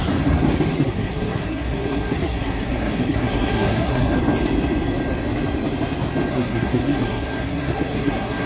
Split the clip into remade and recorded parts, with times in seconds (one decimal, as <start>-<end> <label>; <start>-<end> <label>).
0.0-0.7 recorded; 0.7-4.2 remade; 4.2-6.3 recorded; 6.3-8.5 remade